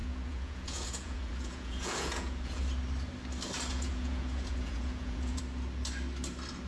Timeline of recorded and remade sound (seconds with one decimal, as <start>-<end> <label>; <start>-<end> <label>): 0.0-2.6 remade; 2.6-3.7 recorded; 3.7-5.4 remade; 5.4-6.7 recorded

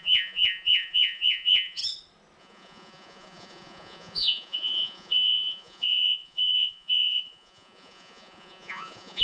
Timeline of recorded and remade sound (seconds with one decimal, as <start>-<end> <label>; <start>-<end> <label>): 0.0-1.8 remade; 1.8-2.4 recorded; 2.4-9.2 remade

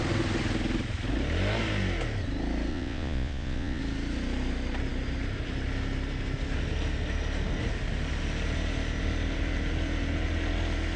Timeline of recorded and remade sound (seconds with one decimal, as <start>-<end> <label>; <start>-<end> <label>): 0.0-2.7 recorded; 2.7-3.8 remade; 3.8-11.0 recorded

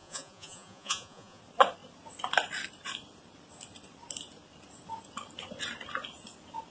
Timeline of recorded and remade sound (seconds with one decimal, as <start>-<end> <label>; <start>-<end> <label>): 0.0-1.4 remade; 1.4-6.7 recorded

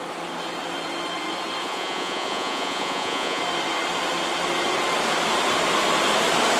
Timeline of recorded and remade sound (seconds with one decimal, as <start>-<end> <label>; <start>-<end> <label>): 0.0-1.6 recorded; 1.6-3.4 remade; 3.4-6.6 recorded